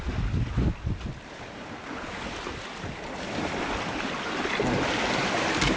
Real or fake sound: real